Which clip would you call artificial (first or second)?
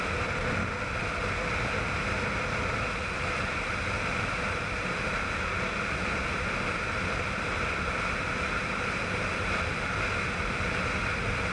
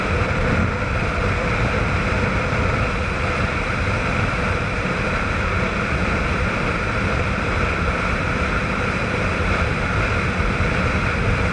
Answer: second